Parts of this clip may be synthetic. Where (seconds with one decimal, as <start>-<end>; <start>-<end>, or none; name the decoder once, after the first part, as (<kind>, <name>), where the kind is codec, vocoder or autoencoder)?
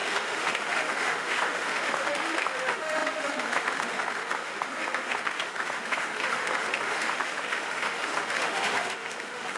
0.0-9.6 (autoencoder, DAC-VAE)